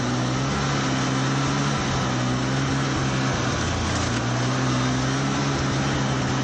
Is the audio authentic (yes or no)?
yes